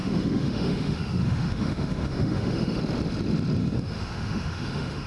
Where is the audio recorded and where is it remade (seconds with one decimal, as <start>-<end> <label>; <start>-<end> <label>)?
0.0-2.8 remade; 2.8-3.6 recorded; 3.6-5.1 remade

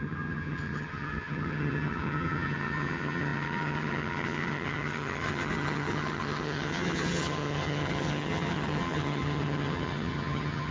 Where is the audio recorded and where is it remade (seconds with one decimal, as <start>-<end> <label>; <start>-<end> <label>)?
0.0-10.7 remade

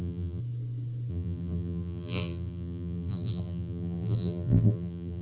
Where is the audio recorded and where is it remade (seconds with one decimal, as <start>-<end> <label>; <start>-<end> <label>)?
0.0-0.4 remade; 0.4-1.1 recorded; 1.1-5.2 remade

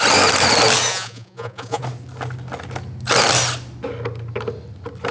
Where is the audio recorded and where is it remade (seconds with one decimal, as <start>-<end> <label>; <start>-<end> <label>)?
0.0-0.9 recorded; 0.9-1.8 remade; 1.8-5.1 recorded

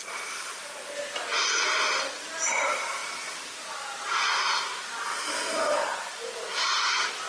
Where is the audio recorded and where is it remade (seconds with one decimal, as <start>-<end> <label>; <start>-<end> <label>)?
0.0-7.3 recorded

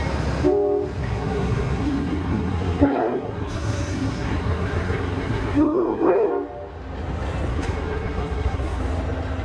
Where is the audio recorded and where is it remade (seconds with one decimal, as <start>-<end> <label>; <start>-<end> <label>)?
0.0-1.0 recorded; 1.0-6.3 remade; 6.3-7.5 recorded; 7.5-8.8 remade; 8.8-9.4 recorded